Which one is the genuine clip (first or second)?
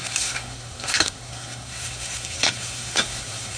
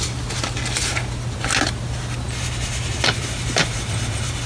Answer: second